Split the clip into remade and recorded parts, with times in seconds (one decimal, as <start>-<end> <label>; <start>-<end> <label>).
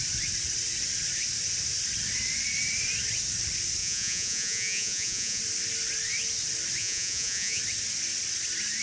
0.0-3.8 recorded; 3.8-5.4 remade; 5.4-6.8 recorded; 6.8-7.6 remade; 7.6-8.8 recorded